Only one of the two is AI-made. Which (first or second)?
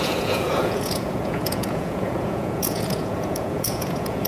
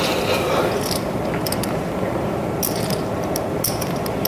first